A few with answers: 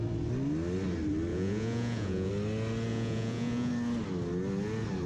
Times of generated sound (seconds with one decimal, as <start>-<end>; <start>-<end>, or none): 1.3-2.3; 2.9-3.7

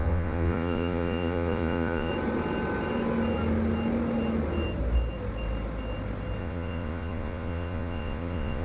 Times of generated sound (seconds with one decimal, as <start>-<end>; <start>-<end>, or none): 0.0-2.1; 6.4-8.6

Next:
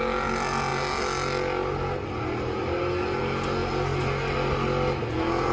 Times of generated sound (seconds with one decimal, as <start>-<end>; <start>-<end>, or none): none